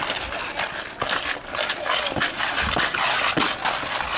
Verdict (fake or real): real